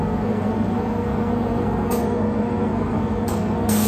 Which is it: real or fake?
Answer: fake